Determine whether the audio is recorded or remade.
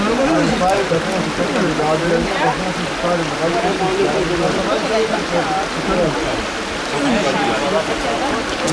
recorded